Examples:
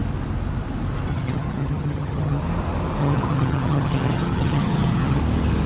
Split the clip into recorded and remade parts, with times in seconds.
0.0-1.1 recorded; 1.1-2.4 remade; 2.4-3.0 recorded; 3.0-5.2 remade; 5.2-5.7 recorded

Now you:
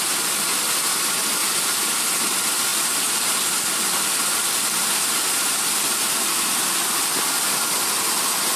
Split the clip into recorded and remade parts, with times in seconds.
0.0-1.4 recorded; 1.4-2.0 remade; 2.0-8.6 recorded

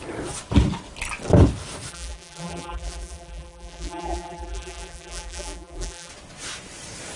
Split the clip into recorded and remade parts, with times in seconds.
0.0-1.9 recorded; 1.9-6.1 remade; 6.1-7.2 recorded

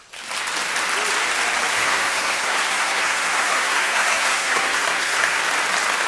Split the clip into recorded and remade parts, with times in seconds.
0.0-1.7 recorded; 1.7-5.4 remade; 5.4-6.1 recorded

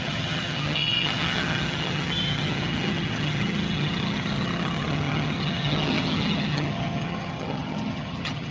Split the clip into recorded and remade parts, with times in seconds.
0.0-8.5 remade

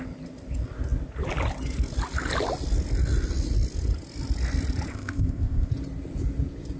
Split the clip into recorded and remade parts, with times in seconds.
0.0-4.9 recorded; 4.9-5.7 remade; 5.7-6.8 recorded